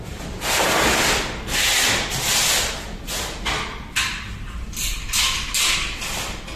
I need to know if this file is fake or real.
real